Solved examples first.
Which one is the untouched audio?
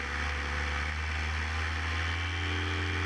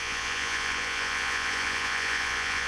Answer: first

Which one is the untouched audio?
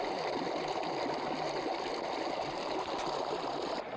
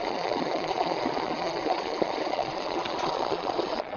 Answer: first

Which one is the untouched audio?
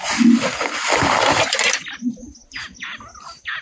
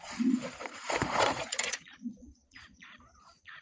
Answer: first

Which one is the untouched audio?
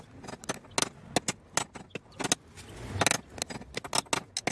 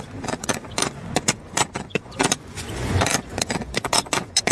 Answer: first